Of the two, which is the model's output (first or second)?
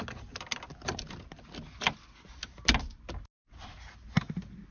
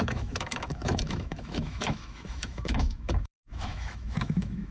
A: second